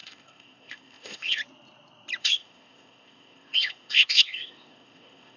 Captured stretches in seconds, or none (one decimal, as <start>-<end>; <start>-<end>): 1.4-2.2